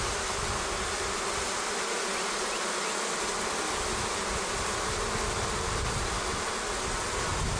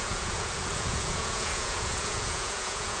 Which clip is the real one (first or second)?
first